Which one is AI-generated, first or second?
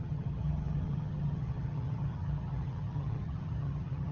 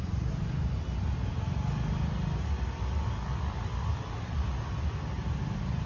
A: first